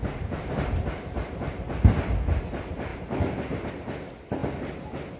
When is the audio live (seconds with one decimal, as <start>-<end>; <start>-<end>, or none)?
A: 0.0-5.2